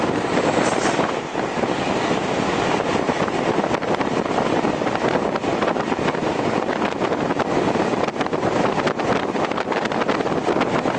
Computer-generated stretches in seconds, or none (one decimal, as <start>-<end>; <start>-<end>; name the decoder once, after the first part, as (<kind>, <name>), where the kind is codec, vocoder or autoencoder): none